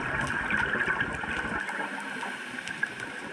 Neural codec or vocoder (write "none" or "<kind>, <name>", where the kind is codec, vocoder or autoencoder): none